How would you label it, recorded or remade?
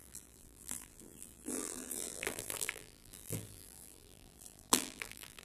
remade